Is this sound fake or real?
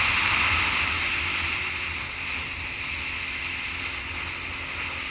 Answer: real